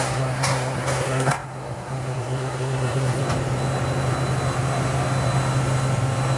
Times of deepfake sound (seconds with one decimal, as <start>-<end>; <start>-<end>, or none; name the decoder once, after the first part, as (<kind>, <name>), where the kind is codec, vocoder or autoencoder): 0.0-3.2 (codec, SNAC)